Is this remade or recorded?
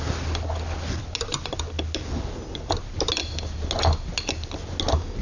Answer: recorded